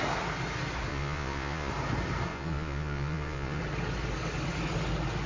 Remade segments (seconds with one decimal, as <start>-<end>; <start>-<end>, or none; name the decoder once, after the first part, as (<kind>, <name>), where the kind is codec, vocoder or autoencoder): 0.9-1.7 (vocoder, Vocos); 2.3-3.6